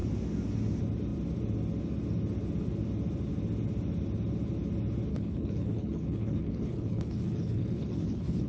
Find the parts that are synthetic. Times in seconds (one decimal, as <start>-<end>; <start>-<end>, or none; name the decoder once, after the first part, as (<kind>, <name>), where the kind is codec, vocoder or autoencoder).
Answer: 5.1-8.5 (codec, HILCodec)